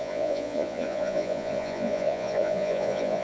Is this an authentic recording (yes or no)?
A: no